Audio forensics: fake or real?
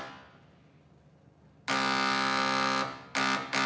real